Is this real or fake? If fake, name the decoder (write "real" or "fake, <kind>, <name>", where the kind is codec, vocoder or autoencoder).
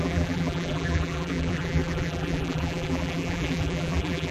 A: fake, vocoder, BigVGAN v2